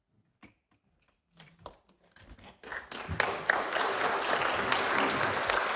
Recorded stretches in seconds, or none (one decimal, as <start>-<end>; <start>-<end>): 0.0-5.8

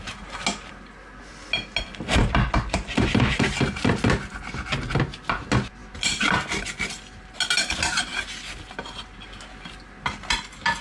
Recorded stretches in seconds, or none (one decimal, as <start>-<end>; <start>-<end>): 0.0-10.8

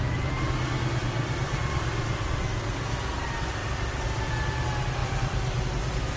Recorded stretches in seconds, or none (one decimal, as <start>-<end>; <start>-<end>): 0.0-1.0; 2.2-3.6; 4.3-5.0; 5.6-6.2

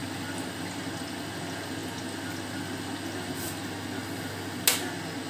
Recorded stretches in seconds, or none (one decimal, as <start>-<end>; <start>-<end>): 0.7-5.3